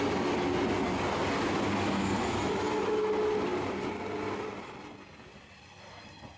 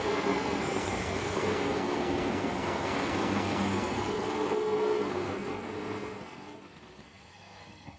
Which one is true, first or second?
first